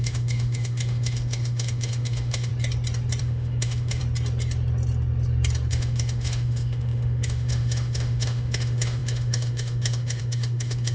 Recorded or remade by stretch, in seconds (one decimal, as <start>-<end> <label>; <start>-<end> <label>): 0.0-2.5 remade; 2.5-3.2 recorded; 3.2-4.0 remade; 4.0-5.7 recorded; 5.7-10.9 remade